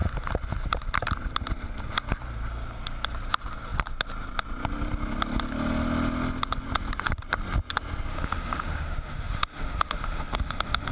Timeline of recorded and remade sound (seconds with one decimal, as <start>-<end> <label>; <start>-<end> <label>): 0.0-8.1 recorded; 8.1-10.9 remade